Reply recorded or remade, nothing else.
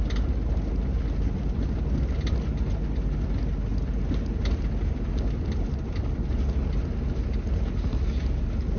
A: recorded